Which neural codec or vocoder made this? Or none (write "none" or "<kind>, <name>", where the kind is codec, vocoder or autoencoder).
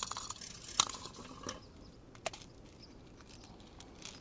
none